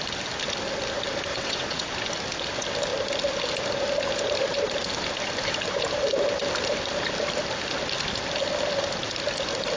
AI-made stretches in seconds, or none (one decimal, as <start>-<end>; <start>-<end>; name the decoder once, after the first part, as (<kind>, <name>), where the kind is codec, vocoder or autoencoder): 1.3-1.8 (vocoder, WaveNeXt)

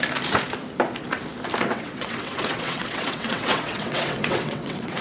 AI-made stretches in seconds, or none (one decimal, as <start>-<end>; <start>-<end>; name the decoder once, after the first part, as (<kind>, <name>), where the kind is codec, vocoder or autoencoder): 1.7-5.0 (vocoder, WaveNeXt)

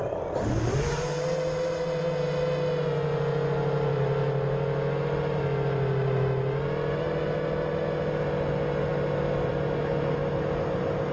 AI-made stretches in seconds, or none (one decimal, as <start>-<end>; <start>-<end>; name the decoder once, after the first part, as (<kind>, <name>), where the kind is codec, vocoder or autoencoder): none

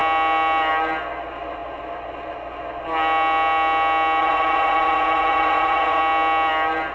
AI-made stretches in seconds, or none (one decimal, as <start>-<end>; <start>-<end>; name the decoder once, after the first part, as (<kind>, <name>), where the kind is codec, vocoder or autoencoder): 4.2-6.0 (vocoder, WaveNeXt)

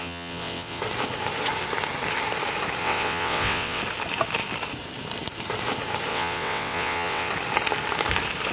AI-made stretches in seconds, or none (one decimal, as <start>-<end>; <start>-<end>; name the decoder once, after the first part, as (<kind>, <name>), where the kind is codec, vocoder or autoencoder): 0.0-0.8 (vocoder, WaveNeXt); 2.8-3.8; 6.1-7.3

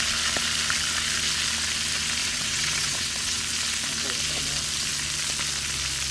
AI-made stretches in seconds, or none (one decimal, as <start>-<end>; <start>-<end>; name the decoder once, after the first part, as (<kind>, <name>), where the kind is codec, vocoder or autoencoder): 2.2-3.4 (vocoder, WaveNeXt)

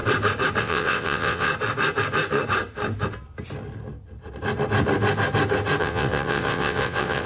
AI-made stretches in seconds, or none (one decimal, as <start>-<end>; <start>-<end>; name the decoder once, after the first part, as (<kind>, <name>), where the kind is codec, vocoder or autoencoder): 0.6-1.5 (vocoder, WaveNeXt); 5.8-7.3

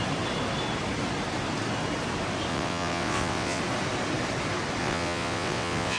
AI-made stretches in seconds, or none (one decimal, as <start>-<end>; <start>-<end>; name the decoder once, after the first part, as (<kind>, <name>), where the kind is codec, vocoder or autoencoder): 2.5-3.6 (vocoder, WaveNeXt); 4.8-6.0